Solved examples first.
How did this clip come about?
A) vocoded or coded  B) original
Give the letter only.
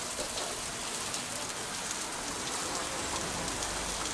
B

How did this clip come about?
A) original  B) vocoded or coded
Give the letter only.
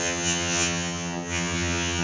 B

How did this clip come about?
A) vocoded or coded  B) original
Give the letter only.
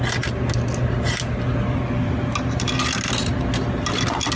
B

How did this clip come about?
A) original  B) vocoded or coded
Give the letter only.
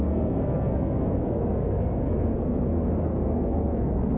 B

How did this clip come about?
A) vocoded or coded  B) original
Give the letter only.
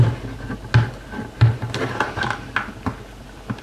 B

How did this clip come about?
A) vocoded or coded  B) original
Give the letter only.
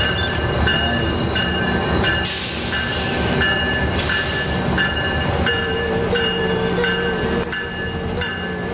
B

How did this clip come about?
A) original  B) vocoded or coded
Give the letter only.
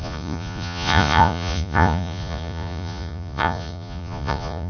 B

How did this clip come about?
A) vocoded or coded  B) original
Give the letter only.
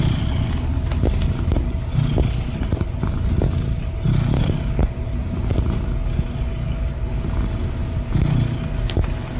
B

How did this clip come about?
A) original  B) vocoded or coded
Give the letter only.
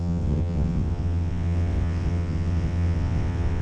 B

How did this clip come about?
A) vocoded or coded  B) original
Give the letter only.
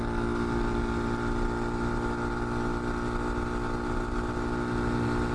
B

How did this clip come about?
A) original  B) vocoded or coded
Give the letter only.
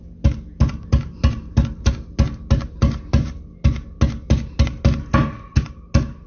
A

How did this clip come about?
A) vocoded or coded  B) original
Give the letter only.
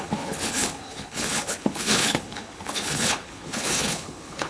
A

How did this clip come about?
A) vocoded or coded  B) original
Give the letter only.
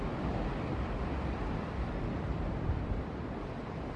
B